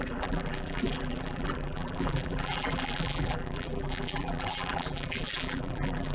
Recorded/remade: remade